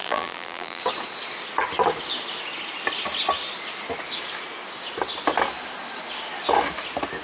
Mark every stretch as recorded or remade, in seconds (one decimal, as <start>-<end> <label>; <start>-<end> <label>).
0.0-0.8 remade; 0.8-7.2 recorded